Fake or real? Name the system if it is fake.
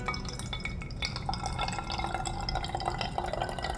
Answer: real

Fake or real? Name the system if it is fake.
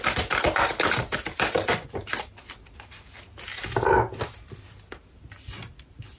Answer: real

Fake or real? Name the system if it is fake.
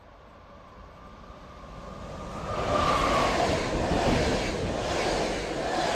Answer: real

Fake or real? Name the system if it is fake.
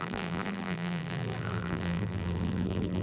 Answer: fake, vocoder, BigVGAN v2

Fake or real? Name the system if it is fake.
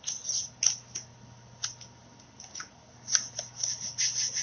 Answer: real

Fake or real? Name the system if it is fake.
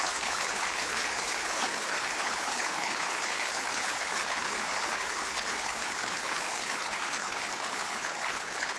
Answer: fake, codec, HILCodec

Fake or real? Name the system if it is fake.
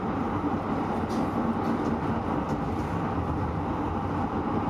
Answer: real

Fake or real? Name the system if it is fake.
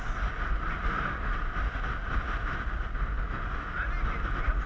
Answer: real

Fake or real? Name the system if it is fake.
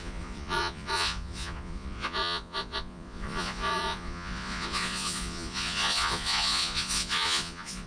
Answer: fake, vocoder, Vocos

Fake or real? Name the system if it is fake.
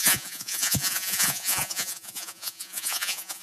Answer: fake, vocoder, Vocos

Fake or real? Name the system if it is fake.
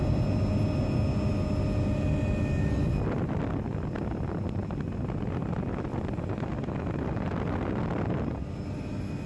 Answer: real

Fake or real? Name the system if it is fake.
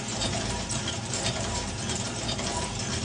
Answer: fake, vocoder, BigVGAN v2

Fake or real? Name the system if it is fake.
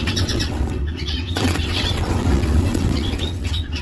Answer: fake, vocoder, WaveNeXt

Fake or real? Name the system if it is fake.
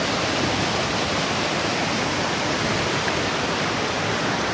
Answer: real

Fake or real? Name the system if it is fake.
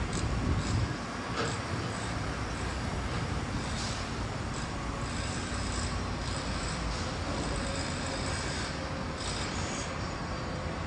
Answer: real